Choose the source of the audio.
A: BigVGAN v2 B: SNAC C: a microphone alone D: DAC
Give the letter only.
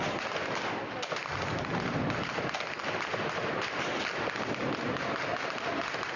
C